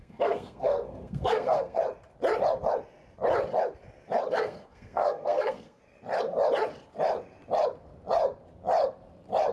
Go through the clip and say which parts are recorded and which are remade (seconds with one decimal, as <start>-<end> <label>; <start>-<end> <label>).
0.0-1.8 remade; 1.8-4.3 recorded; 4.3-5.8 remade; 5.8-9.5 recorded